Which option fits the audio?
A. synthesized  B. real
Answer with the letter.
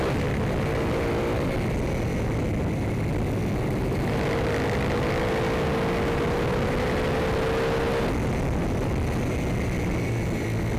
B